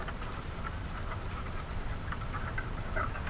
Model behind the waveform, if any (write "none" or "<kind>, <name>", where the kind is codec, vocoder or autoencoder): none